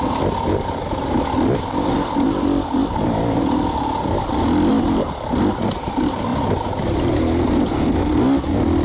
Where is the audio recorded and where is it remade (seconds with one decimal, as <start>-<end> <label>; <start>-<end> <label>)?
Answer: 0.0-8.8 recorded